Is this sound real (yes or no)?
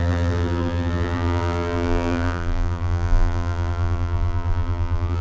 no